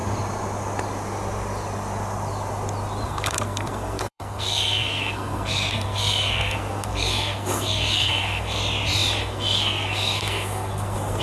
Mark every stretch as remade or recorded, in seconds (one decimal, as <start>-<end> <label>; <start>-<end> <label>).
0.0-3.1 recorded; 3.1-8.6 remade; 8.6-9.2 recorded; 9.2-11.2 remade